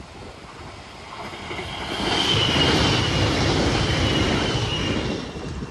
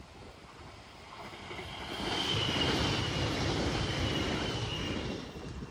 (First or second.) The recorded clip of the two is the first